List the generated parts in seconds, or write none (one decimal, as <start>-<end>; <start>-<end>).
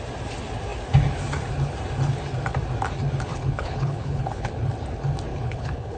3.3-4.5; 5.3-6.0